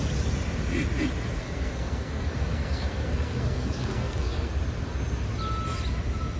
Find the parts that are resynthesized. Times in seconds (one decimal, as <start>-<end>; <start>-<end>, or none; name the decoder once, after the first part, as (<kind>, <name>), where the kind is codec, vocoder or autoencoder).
1.4-4.5 (codec, SNAC)